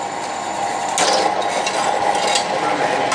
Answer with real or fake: real